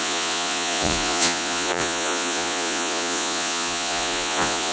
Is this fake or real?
fake